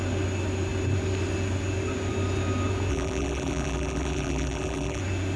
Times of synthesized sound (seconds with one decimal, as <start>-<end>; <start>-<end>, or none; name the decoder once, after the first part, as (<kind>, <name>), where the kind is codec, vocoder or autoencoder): 2.9-5.0 (vocoder, BigVGAN v2)